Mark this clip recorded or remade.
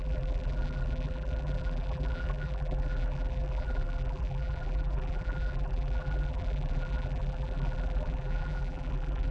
remade